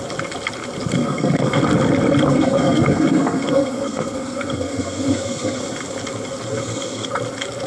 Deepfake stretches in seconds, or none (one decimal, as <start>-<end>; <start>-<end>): 0.9-1.6; 2.3-5.6; 6.6-7.1